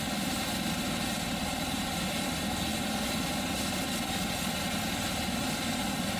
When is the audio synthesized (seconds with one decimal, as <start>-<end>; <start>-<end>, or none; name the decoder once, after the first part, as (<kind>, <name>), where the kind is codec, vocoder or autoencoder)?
1.4-2.2 (vocoder, BigVGAN v2)